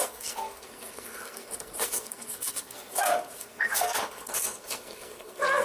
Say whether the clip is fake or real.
fake